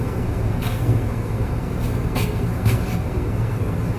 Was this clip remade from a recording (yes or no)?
yes